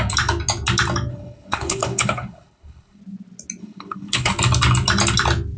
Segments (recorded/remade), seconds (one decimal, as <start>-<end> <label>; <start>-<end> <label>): 0.0-1.1 recorded; 1.1-3.0 remade; 3.0-3.6 recorded; 3.6-4.3 remade; 4.3-5.6 recorded